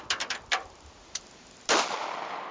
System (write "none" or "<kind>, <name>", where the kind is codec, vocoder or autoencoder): none